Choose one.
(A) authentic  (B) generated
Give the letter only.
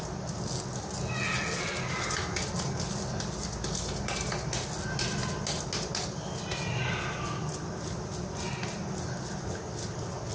A